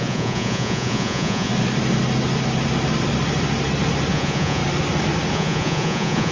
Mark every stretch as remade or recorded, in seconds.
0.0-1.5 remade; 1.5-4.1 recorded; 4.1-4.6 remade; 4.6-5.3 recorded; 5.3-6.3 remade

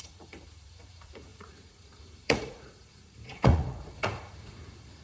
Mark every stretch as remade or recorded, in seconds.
0.0-5.0 remade

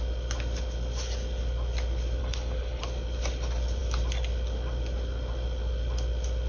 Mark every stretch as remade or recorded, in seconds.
0.0-2.2 recorded; 2.2-2.8 remade; 2.8-6.5 recorded

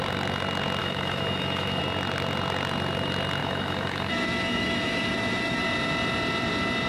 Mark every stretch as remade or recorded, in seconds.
0.0-0.8 recorded; 0.8-1.8 remade; 1.8-3.4 recorded; 3.4-5.6 remade; 5.6-6.9 recorded